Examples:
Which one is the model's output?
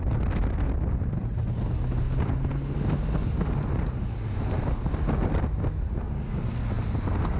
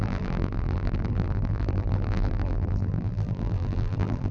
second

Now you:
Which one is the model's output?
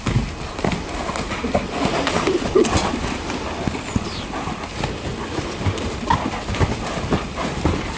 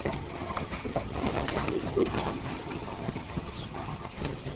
second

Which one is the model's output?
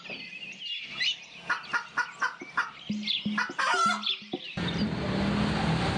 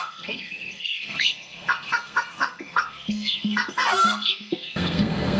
second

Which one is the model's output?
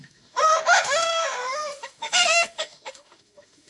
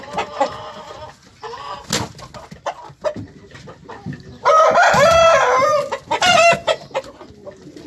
first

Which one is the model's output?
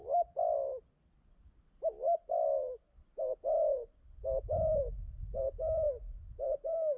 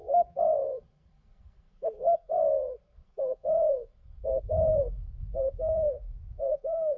second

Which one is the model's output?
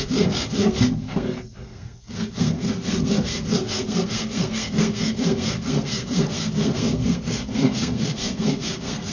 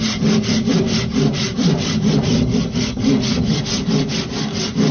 first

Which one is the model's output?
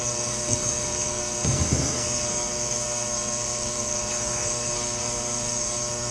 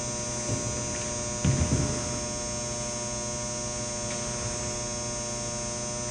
first